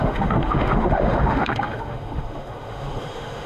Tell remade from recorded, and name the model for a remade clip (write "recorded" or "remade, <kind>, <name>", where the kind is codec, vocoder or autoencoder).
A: remade, autoencoder, DAC-VAE